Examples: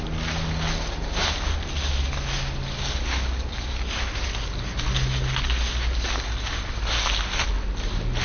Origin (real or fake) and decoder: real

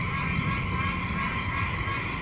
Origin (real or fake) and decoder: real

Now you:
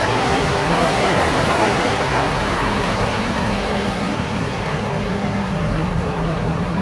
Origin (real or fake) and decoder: fake, codec, SNAC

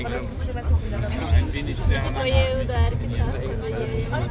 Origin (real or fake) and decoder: real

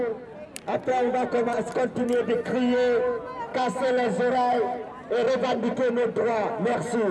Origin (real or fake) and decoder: real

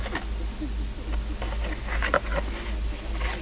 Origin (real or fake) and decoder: real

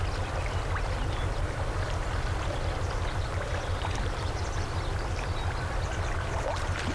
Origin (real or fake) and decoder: real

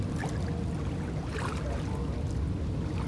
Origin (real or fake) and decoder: real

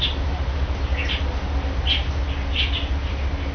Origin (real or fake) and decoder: real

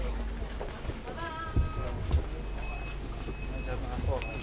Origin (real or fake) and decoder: real